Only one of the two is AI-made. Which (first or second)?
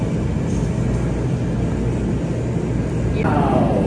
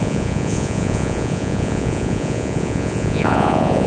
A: second